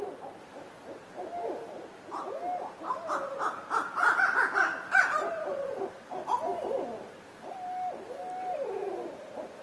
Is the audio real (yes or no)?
yes